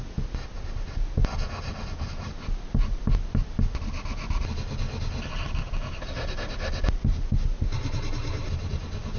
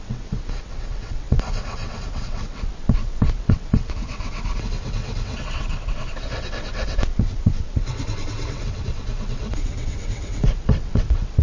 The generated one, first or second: second